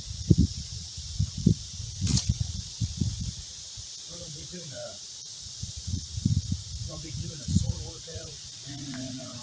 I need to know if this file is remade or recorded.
remade